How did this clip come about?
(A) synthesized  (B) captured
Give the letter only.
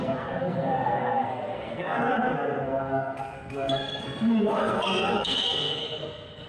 A